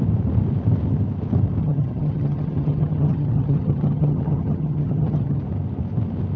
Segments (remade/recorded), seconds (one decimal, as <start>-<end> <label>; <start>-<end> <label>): 0.0-1.6 recorded; 1.6-5.4 remade; 5.4-6.4 recorded